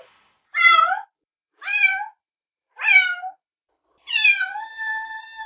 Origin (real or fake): fake